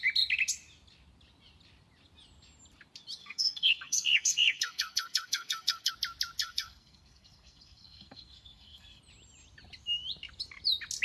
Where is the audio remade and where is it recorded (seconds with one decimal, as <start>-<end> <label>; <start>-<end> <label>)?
0.0-3.2 recorded; 3.2-5.9 remade; 5.9-6.4 recorded; 6.4-9.0 remade; 9.0-11.0 recorded